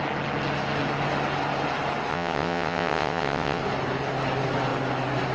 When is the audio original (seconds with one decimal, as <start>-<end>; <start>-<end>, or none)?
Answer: 0.0-2.1; 3.6-5.3